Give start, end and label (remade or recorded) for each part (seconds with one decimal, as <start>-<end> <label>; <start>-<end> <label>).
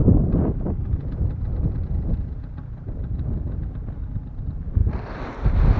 0.0-5.8 recorded